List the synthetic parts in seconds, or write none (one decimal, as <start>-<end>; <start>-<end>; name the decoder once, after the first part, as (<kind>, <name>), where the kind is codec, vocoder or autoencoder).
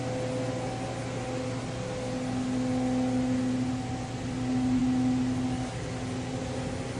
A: none